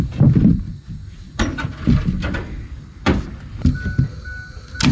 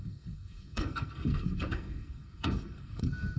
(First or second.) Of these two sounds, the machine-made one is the second